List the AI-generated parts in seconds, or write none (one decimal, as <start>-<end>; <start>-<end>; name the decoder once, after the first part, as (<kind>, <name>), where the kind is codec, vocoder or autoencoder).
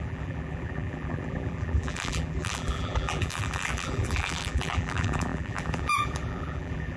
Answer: 0.0-7.0 (vocoder, BigVGAN v2)